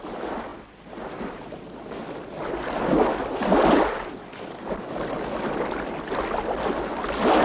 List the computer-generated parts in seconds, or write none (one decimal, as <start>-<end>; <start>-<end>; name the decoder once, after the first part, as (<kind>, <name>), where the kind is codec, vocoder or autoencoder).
none